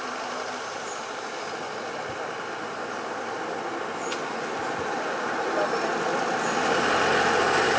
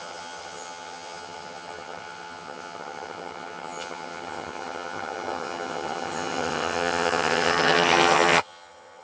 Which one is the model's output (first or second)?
second